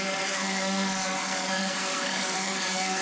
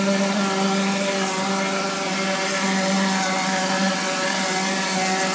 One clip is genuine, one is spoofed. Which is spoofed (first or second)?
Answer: first